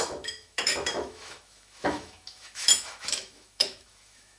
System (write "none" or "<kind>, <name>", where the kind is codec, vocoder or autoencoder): autoencoder, DAC-VAE